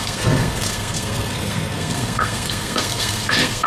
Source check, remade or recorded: remade